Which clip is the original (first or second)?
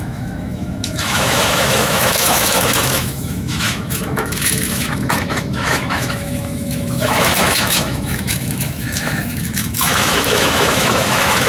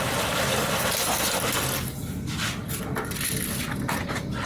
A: second